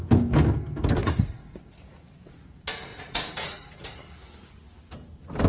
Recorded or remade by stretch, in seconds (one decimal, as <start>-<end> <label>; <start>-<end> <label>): 0.0-1.0 recorded; 1.0-1.9 remade; 1.9-2.9 recorded; 2.9-4.0 remade; 4.0-5.5 recorded

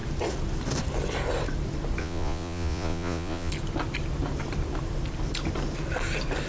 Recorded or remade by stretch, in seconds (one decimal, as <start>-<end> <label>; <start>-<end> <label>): 0.0-2.0 recorded; 2.0-3.5 remade; 3.5-6.5 recorded

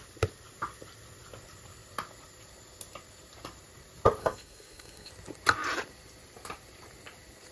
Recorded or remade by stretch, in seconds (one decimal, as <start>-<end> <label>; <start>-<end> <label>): 0.0-4.2 recorded; 4.2-5.1 remade; 5.1-7.5 recorded

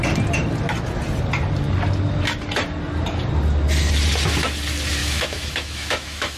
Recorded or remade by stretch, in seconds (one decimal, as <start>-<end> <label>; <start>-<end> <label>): 0.0-5.0 recorded; 5.0-6.4 remade

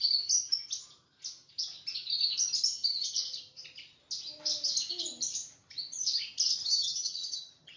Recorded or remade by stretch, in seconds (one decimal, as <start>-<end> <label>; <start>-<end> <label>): 0.0-6.6 recorded; 6.6-7.8 remade

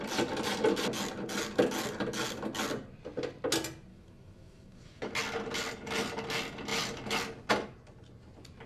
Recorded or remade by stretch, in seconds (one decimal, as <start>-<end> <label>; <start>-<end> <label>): 0.0-3.9 recorded; 3.9-5.1 remade; 5.1-8.7 recorded

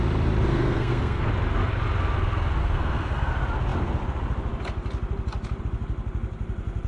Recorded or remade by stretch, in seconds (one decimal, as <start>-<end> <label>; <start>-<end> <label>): 0.0-0.5 recorded; 0.5-1.3 remade; 1.3-2.6 recorded; 2.6-3.3 remade; 3.3-6.9 recorded